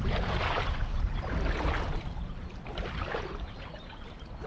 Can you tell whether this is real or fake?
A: real